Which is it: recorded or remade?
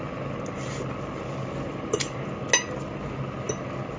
recorded